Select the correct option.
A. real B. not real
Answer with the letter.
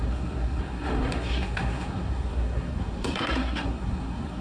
B